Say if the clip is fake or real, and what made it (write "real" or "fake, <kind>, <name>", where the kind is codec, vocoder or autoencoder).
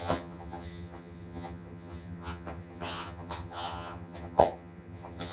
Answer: fake, vocoder, HiFi-GAN